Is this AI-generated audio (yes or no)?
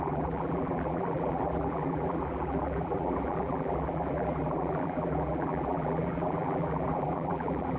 yes